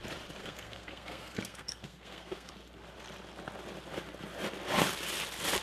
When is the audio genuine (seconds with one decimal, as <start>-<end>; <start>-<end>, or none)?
0.0-0.4; 2.5-5.6